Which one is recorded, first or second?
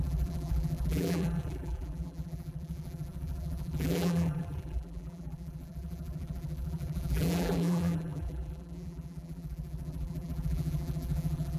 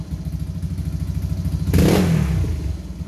second